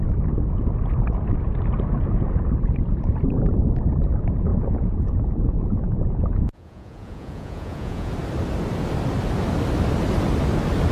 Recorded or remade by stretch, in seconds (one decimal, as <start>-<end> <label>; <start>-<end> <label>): 0.0-4.5 recorded; 4.5-8.1 remade; 8.1-10.9 recorded